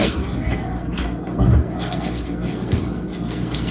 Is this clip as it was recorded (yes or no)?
no